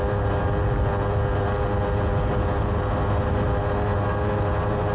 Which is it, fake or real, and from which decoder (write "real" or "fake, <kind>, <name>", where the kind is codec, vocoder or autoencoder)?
real